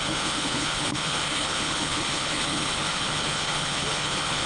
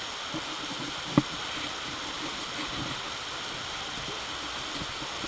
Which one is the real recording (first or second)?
second